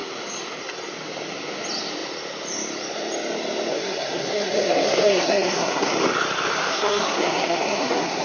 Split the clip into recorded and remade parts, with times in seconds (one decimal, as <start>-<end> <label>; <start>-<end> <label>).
0.0-3.7 recorded; 3.7-5.9 remade; 5.9-6.7 recorded; 6.7-8.2 remade